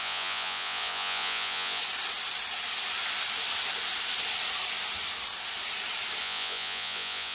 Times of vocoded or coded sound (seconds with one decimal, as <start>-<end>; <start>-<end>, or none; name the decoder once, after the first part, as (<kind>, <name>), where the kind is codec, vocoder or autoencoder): 0.0-1.8 (vocoder, Vocos); 6.2-7.3